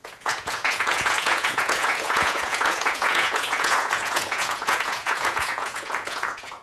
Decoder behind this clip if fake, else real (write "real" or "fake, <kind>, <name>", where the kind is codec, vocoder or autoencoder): fake, vocoder, Vocos